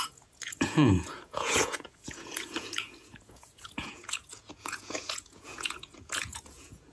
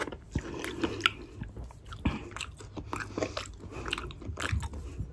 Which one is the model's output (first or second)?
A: first